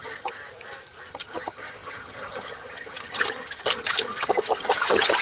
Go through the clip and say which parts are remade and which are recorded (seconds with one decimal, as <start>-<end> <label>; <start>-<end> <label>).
0.0-0.4 remade; 0.4-1.1 recorded; 1.1-5.2 remade